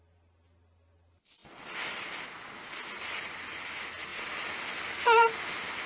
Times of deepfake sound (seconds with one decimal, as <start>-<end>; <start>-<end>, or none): none